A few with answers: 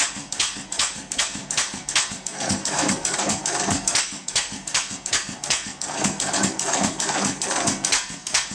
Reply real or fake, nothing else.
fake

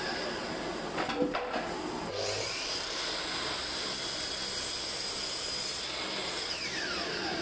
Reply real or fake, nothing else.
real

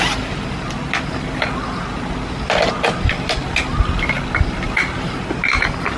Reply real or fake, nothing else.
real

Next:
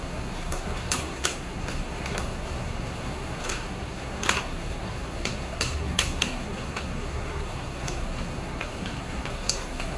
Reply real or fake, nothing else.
fake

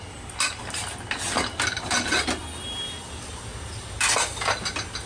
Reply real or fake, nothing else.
real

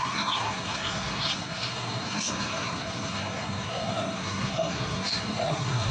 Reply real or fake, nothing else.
fake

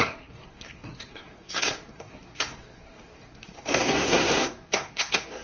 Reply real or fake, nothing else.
fake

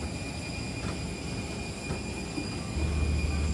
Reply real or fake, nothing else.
real